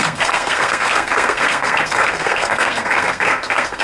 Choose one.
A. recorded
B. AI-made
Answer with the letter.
B